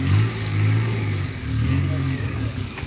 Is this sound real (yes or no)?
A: no